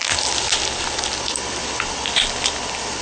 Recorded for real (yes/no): yes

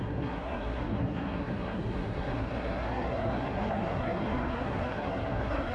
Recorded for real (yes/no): no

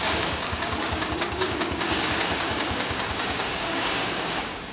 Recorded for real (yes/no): no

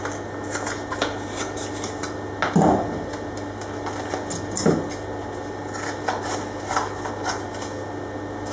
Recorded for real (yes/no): yes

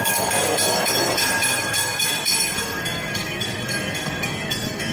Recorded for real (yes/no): no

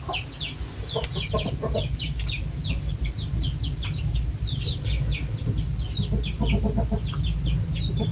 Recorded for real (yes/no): yes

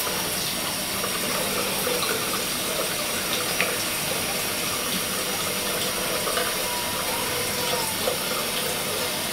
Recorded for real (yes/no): yes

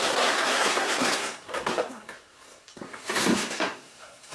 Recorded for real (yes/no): no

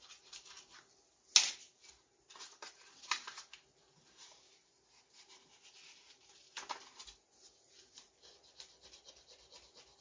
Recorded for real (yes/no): yes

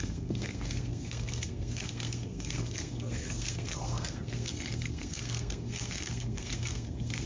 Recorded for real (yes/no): no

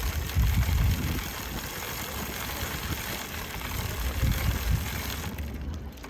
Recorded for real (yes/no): yes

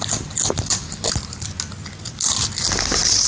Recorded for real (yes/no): yes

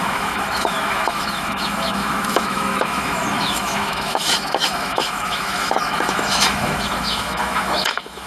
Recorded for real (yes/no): no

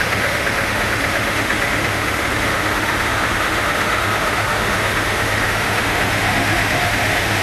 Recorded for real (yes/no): no